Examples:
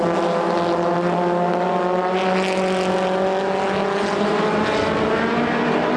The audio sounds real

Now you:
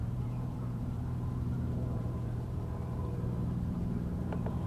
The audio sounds fake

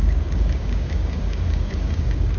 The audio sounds fake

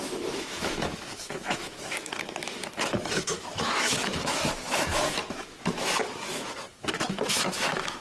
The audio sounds fake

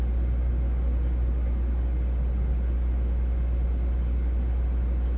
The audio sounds real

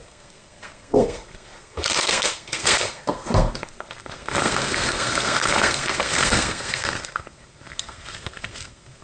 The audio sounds fake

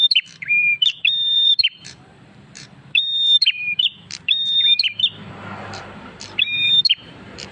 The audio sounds fake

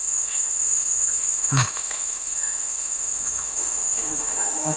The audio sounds fake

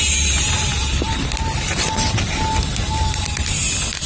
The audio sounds real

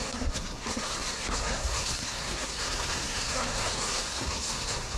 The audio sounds fake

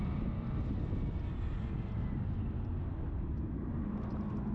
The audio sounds real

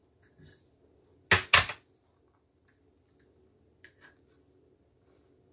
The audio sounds real